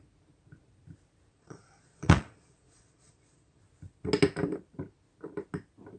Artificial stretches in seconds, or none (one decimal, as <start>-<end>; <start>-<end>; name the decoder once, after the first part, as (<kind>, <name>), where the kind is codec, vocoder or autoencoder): 1.3-3.6 (vocoder, Vocos)